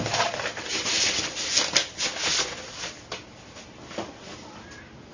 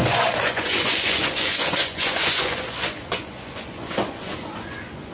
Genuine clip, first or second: first